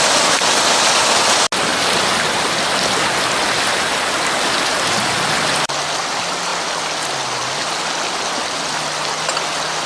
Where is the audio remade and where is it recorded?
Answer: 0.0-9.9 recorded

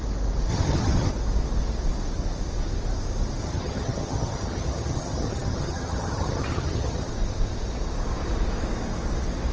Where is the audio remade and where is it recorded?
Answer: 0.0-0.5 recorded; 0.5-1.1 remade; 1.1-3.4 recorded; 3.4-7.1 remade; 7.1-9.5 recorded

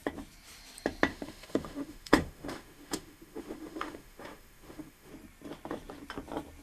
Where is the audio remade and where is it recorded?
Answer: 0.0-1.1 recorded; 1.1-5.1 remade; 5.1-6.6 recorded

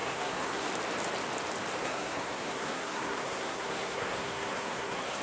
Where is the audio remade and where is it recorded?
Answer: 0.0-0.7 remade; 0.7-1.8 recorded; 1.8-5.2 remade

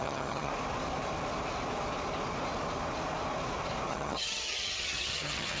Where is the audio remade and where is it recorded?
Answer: 0.0-0.5 remade; 0.5-3.9 recorded; 3.9-5.6 remade

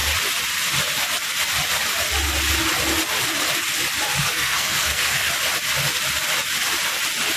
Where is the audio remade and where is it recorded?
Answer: 0.0-4.2 recorded; 4.2-5.3 remade; 5.3-7.4 recorded